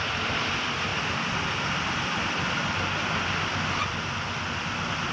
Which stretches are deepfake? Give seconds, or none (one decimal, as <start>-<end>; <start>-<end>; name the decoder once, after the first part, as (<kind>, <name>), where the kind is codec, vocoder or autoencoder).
none

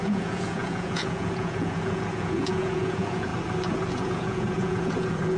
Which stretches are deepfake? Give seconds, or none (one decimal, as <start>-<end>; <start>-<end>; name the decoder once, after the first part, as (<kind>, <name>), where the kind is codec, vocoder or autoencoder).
0.0-3.3 (vocoder, Vocos); 3.9-5.4

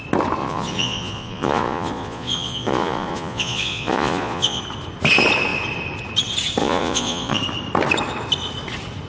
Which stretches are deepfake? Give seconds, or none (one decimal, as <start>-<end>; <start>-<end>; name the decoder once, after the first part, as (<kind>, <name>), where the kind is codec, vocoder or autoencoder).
0.4-4.6 (vocoder, Vocos); 6.6-7.4

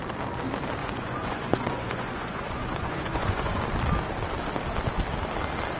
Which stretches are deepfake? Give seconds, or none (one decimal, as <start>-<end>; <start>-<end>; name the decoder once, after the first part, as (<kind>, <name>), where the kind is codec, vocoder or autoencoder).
0.8-3.6 (vocoder, Vocos)

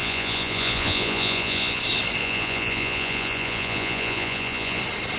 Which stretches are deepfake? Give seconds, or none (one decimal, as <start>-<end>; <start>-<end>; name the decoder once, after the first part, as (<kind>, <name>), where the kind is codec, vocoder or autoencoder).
0.0-1.8 (vocoder, Vocos); 2.2-4.8

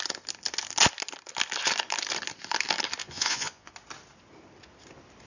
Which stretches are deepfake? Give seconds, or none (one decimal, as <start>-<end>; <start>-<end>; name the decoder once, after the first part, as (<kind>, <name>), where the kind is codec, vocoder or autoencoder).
3.0-3.7 (vocoder, Vocos)

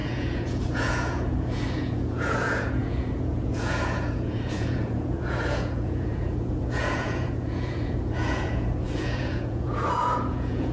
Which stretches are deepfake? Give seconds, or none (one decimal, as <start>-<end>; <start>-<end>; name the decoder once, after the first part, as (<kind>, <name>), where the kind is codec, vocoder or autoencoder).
0.0-10.7 (vocoder, Vocos)

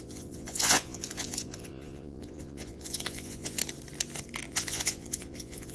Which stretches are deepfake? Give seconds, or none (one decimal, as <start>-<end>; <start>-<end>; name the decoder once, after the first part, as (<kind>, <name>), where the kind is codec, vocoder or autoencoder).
0.0-3.6 (vocoder, Vocos); 4.5-5.7